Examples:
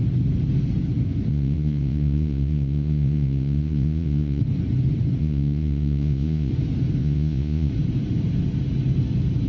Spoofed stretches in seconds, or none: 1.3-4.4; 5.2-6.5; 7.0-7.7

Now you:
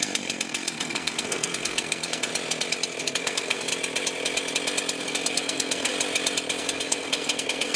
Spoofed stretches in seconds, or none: 0.0-2.3; 3.0-3.7; 5.0-5.9; 6.6-7.8

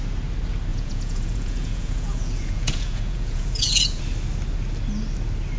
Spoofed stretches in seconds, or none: 0.7-4.0

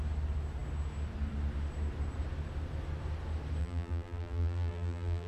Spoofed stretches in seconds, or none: 3.6-5.3